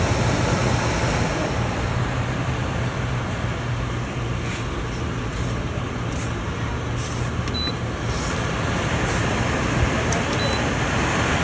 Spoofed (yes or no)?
no